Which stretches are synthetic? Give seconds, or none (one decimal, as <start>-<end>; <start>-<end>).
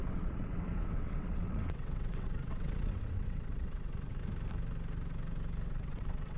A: 0.0-4.2; 5.7-6.4